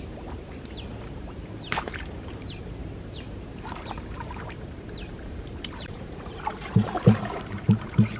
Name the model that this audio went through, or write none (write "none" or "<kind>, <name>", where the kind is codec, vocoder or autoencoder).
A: vocoder, BigVGAN v2